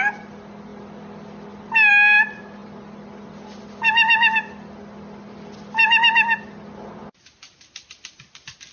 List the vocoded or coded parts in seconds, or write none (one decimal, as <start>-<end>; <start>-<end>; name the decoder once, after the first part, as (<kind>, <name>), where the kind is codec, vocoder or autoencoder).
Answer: none